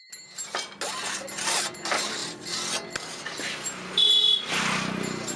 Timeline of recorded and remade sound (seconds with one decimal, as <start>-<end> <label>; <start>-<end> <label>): 0.0-5.4 recorded